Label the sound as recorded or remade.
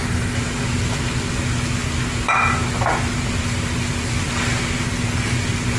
recorded